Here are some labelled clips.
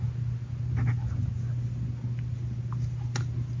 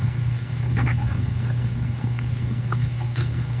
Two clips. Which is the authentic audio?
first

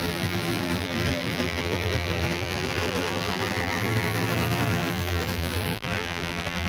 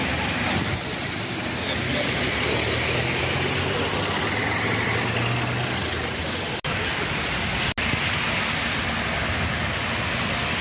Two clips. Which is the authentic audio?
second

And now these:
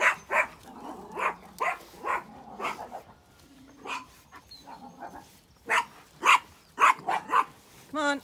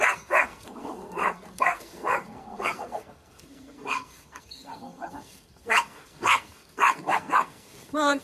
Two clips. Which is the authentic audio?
first